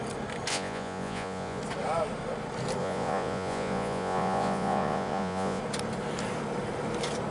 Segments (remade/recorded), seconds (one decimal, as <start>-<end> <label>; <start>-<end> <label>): 0.0-0.5 recorded; 0.5-1.6 remade; 1.6-2.8 recorded; 2.8-5.6 remade; 5.6-7.3 recorded